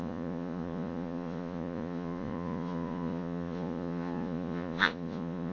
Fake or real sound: fake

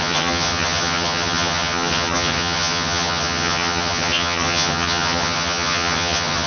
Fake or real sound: fake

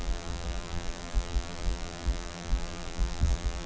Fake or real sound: fake